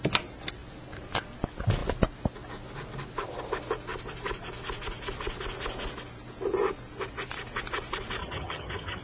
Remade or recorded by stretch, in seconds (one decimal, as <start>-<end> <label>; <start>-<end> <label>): 0.0-8.2 recorded; 8.2-9.0 remade